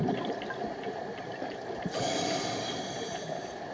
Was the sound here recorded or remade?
remade